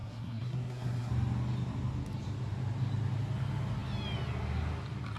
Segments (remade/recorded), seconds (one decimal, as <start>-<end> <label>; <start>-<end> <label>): 0.0-1.1 remade; 1.1-5.2 recorded